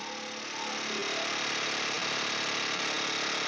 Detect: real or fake real